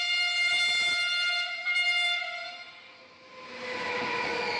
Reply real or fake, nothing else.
real